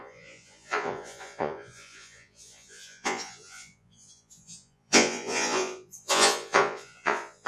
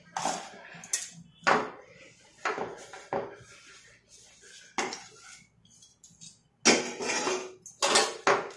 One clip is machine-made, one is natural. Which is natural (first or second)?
second